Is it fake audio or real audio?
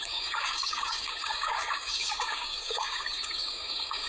fake